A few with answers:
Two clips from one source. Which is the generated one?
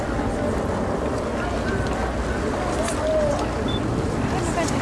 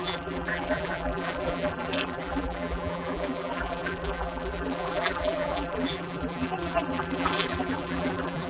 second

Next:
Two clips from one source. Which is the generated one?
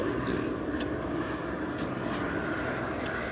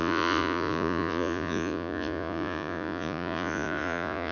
second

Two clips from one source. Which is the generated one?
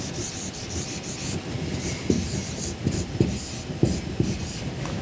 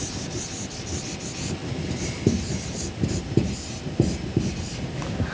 first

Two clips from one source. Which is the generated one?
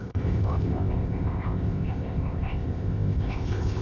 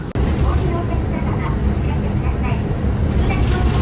first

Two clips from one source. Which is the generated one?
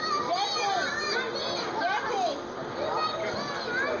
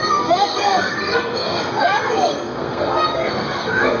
second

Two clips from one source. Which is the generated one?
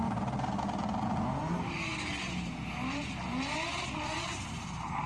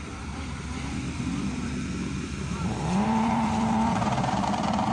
second